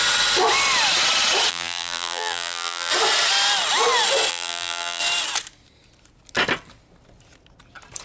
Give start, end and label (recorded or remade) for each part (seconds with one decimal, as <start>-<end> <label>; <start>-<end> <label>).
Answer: 0.0-1.5 recorded; 1.5-2.9 remade; 2.9-4.3 recorded; 4.3-5.0 remade; 5.0-8.0 recorded